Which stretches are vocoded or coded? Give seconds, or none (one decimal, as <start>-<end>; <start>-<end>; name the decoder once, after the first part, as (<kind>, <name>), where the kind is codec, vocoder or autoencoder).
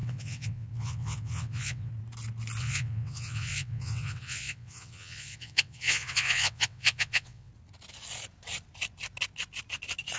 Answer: 0.0-1.9 (vocoder, WaveNeXt); 2.6-7.5